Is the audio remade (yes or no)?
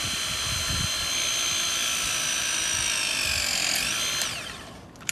no